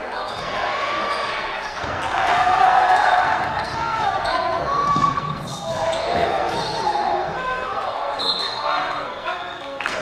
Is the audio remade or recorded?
remade